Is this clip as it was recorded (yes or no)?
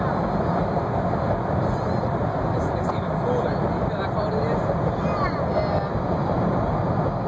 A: yes